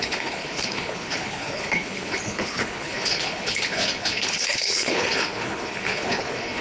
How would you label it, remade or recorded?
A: remade